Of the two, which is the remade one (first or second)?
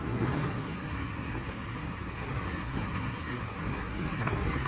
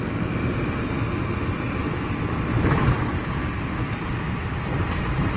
first